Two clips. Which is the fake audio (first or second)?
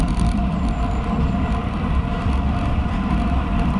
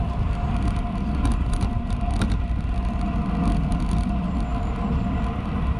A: first